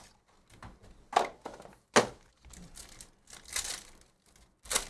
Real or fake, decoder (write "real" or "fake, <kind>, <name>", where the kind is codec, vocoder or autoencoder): real